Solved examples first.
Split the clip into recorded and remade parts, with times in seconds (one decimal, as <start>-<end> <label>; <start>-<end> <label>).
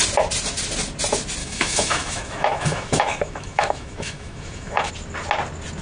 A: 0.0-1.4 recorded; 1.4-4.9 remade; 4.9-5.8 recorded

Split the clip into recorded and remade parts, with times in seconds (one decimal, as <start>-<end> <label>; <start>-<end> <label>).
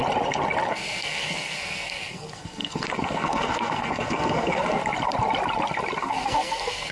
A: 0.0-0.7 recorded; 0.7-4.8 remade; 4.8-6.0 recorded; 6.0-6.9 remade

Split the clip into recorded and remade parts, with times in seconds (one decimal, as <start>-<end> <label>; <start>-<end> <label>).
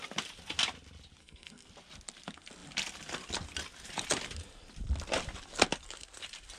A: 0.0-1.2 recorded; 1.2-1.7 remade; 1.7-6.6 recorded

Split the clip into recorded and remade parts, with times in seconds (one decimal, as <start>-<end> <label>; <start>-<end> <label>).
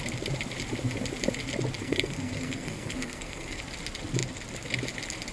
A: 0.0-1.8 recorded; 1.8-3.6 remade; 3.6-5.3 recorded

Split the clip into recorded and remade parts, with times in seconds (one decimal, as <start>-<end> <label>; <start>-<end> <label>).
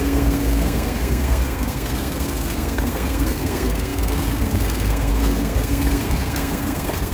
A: 0.0-7.1 remade